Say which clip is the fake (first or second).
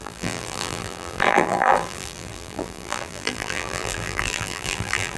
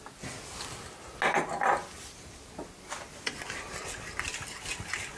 first